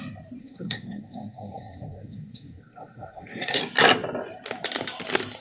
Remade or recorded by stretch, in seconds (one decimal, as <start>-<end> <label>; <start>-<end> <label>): 0.0-0.4 recorded; 0.4-3.6 remade; 3.6-5.4 recorded